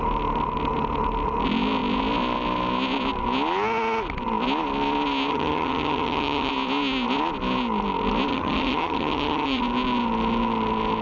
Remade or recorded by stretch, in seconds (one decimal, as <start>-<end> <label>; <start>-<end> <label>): 0.0-5.3 recorded; 5.3-6.5 remade; 6.5-8.3 recorded; 8.3-9.6 remade; 9.6-11.0 recorded